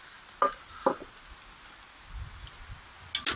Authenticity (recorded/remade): recorded